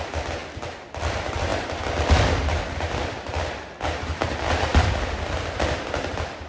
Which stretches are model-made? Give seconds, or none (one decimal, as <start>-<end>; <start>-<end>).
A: none